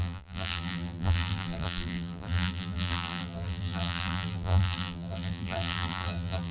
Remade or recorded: remade